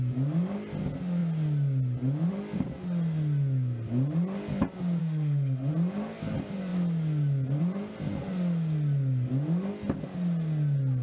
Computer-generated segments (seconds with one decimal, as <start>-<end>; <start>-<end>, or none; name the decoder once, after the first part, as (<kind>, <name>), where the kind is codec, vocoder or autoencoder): 5.0-5.7 (autoencoder, DAC-VAE)

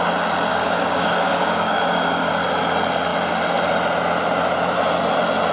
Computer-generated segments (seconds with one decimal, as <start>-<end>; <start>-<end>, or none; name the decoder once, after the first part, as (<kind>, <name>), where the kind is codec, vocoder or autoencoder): 0.5-2.3 (codec, DAC)

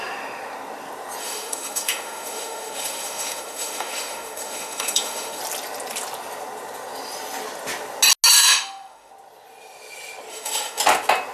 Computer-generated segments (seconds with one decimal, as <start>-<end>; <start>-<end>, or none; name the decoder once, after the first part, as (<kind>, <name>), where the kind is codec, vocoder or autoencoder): 1.2-5.4 (autoencoder, DAC-VAE); 8.4-9.1; 10.3-10.8

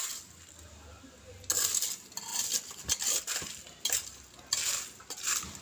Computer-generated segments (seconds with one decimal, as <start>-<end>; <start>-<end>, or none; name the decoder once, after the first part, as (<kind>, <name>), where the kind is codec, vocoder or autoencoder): none

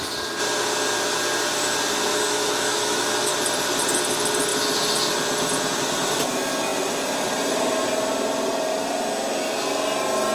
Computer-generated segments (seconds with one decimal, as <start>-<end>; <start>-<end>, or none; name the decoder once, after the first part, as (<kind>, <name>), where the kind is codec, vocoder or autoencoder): 2.1-3.3 (autoencoder, DAC-VAE)

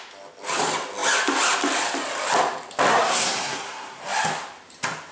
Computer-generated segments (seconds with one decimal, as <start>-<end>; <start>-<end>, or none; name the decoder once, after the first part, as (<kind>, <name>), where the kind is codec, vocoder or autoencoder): 2.9-4.0 (codec, SNAC)

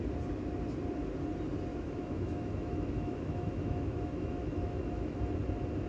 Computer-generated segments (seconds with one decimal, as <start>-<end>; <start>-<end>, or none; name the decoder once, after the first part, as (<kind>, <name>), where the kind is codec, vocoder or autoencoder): 1.7-5.2 (autoencoder, DAC-VAE)

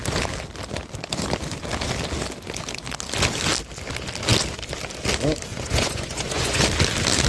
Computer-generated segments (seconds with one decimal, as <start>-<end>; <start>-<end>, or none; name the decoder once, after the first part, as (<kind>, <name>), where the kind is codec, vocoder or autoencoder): 5.5-6.6 (vocoder, Vocos)